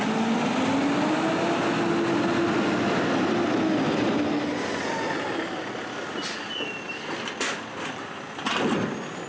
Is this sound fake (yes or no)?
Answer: no